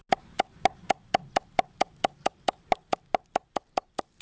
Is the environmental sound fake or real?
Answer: real